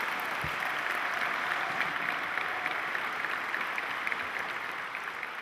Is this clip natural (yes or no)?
yes